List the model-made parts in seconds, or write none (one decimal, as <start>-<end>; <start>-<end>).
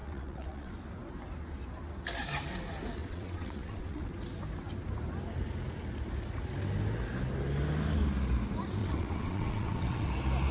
0.0-0.7; 3.0-4.1; 8.8-10.1